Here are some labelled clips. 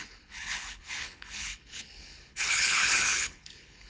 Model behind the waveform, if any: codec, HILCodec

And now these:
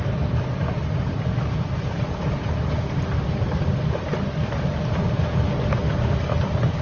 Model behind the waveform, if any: none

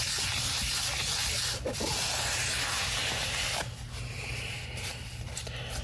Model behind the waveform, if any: none